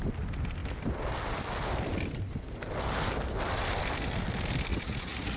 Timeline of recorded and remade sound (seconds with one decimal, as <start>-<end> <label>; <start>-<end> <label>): 0.0-4.7 recorded; 4.7-5.4 remade